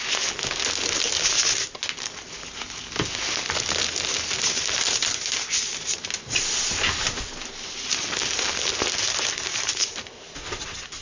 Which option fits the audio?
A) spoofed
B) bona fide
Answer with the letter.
B